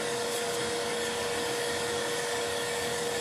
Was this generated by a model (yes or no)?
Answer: yes